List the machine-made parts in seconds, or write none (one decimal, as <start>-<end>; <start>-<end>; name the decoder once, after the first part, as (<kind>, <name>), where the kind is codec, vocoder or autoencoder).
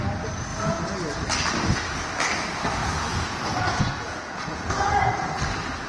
2.8-5.3 (vocoder, Vocos)